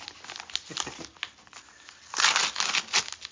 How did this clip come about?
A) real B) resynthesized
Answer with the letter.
A